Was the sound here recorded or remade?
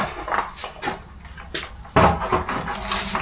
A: recorded